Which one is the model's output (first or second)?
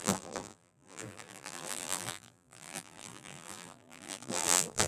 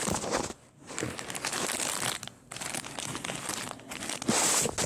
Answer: first